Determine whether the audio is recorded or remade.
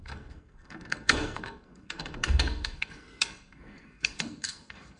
remade